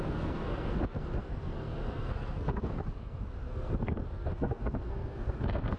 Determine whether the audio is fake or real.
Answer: fake